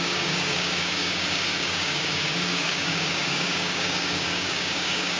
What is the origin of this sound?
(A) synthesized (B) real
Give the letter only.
A